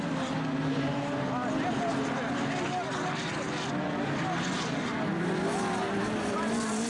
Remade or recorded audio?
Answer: recorded